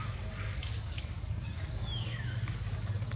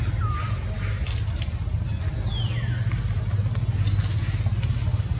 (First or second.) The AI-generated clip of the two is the first